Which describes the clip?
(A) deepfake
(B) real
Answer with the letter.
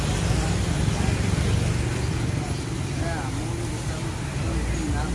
B